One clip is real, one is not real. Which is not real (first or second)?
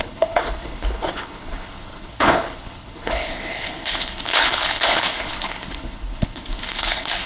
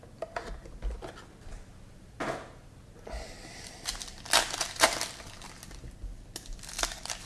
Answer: first